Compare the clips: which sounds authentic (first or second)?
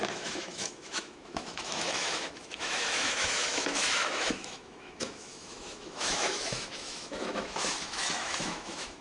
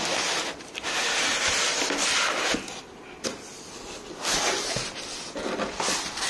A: second